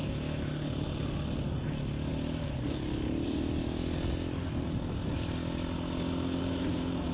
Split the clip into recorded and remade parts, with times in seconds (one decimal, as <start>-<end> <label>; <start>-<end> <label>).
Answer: 0.0-0.5 remade; 0.5-7.1 recorded